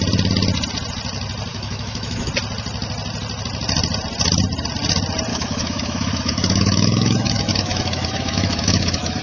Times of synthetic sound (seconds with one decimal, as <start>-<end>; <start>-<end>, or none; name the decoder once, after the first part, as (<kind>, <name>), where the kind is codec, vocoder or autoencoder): 1.5-2.3 (autoencoder, DAC-VAE); 5.3-9.2